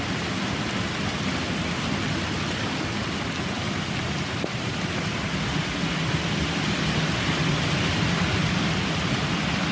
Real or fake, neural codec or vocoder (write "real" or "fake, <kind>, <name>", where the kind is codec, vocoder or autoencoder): real